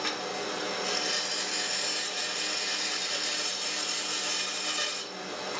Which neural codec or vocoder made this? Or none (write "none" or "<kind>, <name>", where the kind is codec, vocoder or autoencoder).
none